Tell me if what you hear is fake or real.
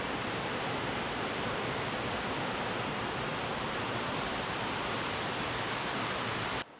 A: real